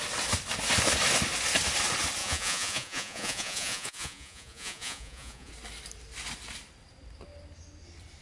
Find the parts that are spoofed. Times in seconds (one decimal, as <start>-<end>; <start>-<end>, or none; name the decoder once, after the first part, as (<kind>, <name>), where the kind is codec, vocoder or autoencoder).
2.2-5.5 (vocoder, Vocos)